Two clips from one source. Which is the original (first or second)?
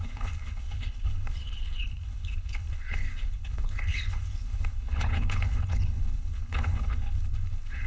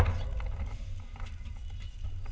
second